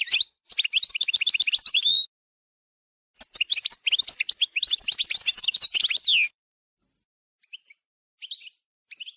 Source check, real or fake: real